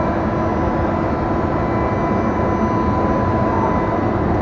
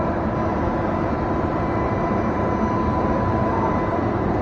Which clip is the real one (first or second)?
first